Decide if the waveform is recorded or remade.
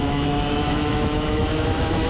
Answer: remade